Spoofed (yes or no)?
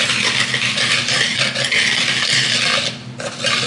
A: no